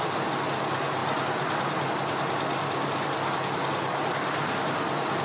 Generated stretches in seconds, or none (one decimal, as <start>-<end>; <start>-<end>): none